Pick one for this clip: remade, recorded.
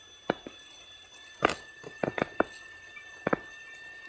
recorded